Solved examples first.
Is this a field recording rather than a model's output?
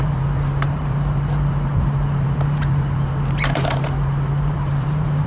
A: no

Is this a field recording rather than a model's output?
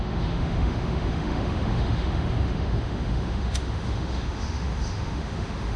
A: no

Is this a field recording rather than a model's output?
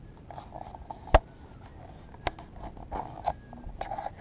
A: yes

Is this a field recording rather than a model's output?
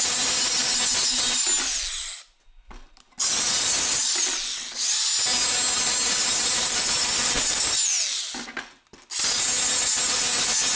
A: yes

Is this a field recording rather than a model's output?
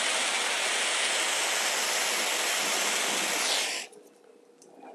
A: yes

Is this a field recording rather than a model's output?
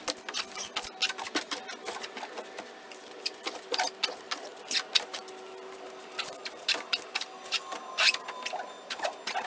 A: yes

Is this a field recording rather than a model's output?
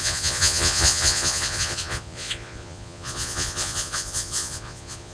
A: no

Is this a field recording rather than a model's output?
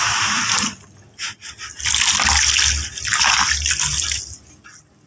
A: yes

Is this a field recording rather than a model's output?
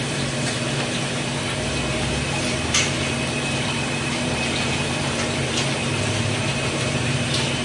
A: no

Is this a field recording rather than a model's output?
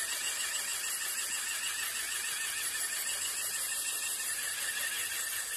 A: yes